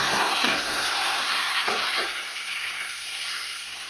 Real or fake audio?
fake